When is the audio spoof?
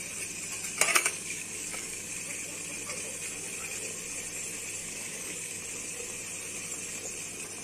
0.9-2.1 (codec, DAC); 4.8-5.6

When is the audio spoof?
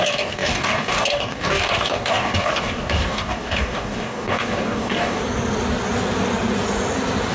0.0-5.2 (codec, DAC)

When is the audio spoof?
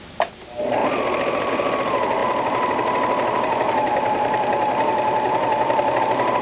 none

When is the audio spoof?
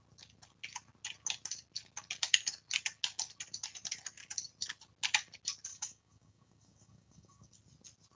5.7-7.5 (codec, DAC)